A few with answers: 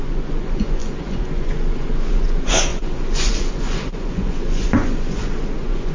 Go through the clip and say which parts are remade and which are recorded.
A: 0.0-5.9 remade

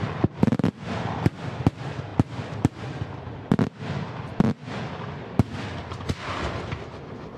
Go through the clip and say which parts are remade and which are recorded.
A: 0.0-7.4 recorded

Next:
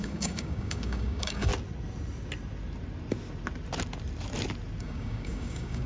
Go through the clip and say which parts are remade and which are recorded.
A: 0.0-1.5 remade; 1.5-4.8 recorded; 4.8-5.9 remade

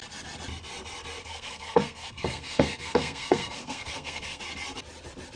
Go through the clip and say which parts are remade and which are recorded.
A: 0.0-1.2 recorded; 1.2-4.4 remade; 4.4-5.4 recorded